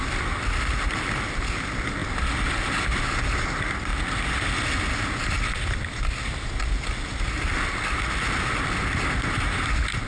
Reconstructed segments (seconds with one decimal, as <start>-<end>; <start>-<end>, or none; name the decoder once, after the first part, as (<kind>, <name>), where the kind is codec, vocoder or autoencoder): none